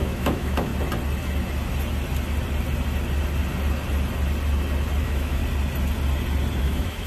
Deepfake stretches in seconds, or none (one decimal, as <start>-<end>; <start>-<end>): 0.0-0.7; 5.0-5.4; 6.6-7.1